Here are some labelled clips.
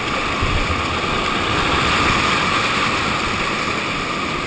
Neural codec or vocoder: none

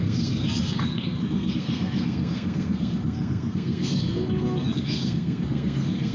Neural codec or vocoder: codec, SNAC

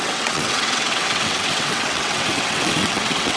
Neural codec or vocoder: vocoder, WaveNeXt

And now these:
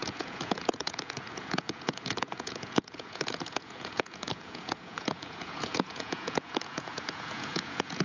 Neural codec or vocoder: vocoder, Vocos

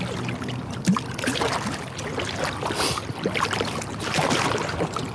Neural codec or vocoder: none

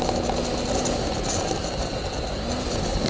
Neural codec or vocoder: none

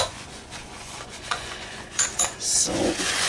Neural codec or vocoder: vocoder, Vocos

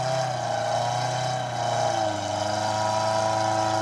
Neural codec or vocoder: none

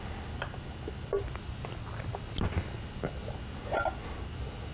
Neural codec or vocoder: none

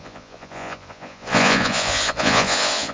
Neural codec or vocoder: vocoder, Vocos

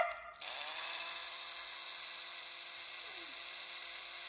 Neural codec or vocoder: none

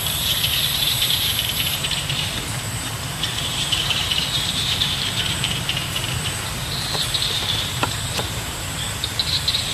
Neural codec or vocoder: vocoder, BigVGAN v2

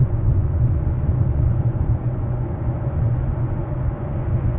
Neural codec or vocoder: vocoder, Vocos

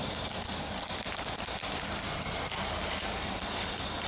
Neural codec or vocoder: none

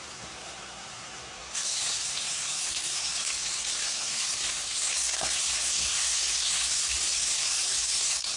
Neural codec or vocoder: codec, SNAC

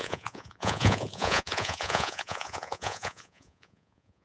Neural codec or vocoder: vocoder, Vocos